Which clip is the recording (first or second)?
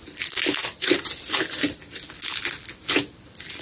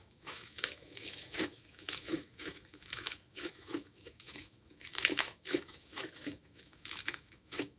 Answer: first